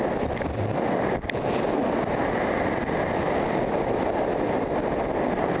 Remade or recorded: recorded